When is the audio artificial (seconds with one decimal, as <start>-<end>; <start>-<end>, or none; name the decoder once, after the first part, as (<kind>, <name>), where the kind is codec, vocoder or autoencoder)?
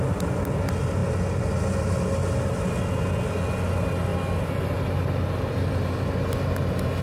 none